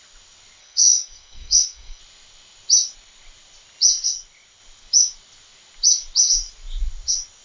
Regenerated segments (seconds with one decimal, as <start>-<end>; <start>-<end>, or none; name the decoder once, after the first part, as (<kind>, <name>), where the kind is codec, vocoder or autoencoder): 0.6-2.0 (codec, SNAC)